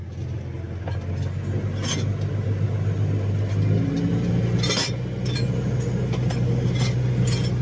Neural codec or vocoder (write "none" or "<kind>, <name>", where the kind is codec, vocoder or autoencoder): none